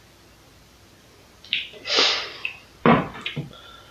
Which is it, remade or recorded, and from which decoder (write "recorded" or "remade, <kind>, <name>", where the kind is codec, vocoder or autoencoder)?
remade, vocoder, BigVGAN v2